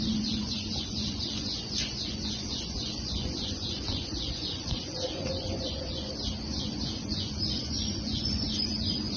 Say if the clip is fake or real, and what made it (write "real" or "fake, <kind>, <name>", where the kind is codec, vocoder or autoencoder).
fake, vocoder, Vocos